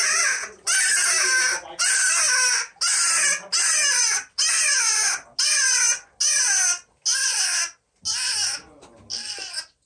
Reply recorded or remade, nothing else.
recorded